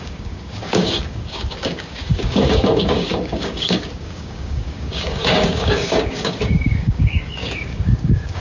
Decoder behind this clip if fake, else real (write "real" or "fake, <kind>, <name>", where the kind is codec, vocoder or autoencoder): fake, codec, DAC